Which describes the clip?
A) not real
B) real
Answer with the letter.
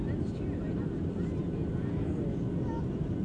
B